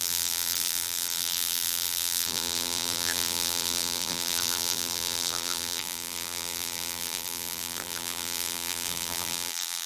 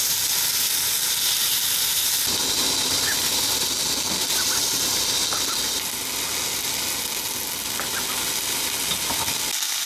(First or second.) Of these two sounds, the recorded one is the second